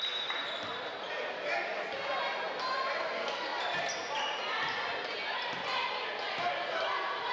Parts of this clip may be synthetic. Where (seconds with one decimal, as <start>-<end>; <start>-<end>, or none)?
none